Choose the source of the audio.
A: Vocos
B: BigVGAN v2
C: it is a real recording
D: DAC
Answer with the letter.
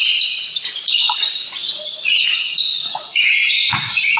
A